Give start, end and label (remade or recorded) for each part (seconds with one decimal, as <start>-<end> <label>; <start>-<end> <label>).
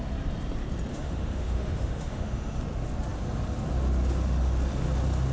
0.0-0.9 recorded; 0.9-2.6 remade; 2.6-5.3 recorded